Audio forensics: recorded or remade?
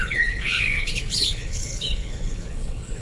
remade